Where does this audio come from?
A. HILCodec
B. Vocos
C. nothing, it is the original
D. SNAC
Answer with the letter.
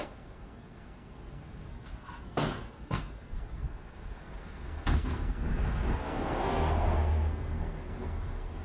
D